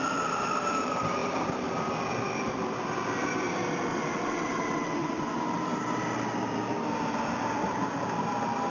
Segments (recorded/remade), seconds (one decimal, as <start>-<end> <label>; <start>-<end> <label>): 0.0-3.9 recorded; 3.9-5.4 remade; 5.4-8.7 recorded